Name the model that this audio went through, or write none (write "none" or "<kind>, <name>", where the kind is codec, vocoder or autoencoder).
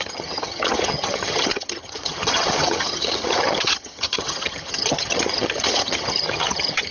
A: vocoder, HiFi-GAN